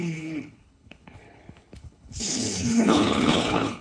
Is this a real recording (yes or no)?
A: no